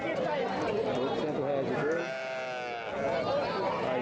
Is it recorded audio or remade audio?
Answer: recorded